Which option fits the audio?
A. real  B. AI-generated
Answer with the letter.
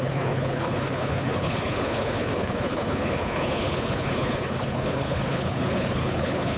B